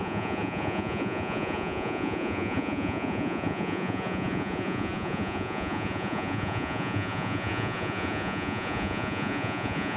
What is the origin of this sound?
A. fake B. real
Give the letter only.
A